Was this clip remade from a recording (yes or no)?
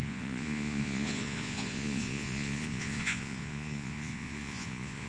yes